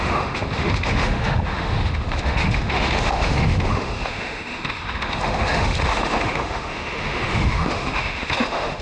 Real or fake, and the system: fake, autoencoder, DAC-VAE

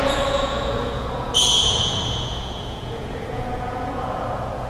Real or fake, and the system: fake, vocoder, Vocos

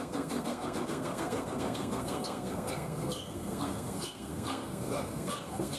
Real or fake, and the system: fake, codec, SNAC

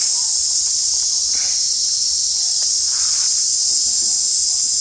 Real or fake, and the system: real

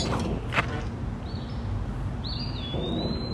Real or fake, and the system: real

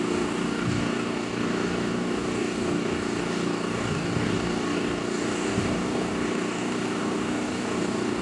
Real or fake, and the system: fake, codec, DAC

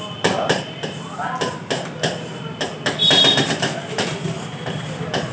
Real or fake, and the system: real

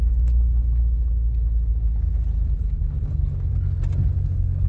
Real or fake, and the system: real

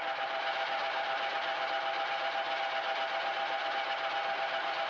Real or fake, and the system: real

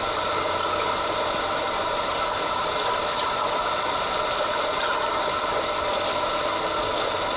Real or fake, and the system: real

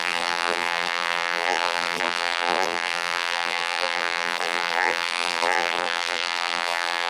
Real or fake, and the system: fake, vocoder, BigVGAN v2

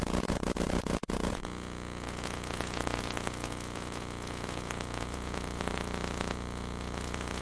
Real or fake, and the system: fake, vocoder, Vocos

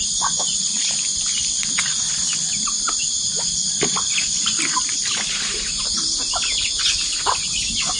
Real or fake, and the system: real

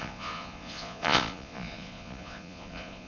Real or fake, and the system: fake, vocoder, Vocos